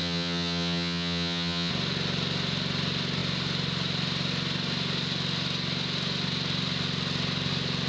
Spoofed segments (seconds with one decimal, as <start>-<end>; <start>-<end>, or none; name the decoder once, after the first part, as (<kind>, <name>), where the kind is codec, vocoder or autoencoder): 0.0-1.7 (vocoder, HiFi-GAN)